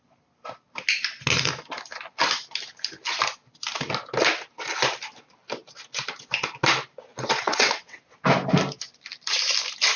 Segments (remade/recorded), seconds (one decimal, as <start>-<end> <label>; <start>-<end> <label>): 0.0-7.1 recorded; 7.1-8.0 remade; 8.0-10.0 recorded

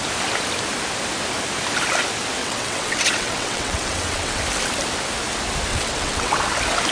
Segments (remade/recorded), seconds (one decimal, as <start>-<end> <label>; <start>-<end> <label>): 0.0-2.4 recorded; 2.4-4.4 remade; 4.4-5.7 recorded; 5.7-6.4 remade; 6.4-6.9 recorded

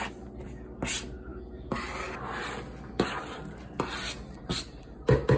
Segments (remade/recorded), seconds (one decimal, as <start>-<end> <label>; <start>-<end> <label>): 0.0-5.4 recorded

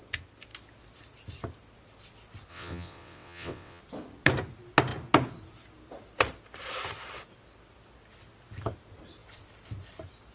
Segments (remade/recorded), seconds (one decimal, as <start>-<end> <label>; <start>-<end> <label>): 0.0-2.5 recorded; 2.5-3.8 remade; 3.8-10.3 recorded